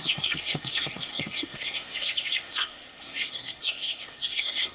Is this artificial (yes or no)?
yes